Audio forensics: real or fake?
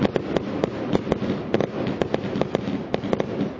real